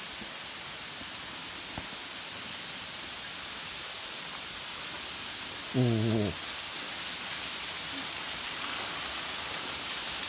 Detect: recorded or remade recorded